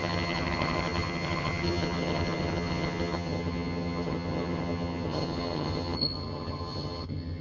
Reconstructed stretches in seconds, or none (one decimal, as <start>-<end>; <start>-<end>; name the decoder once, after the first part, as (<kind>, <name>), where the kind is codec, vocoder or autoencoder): 0.0-7.4 (vocoder, HiFi-GAN)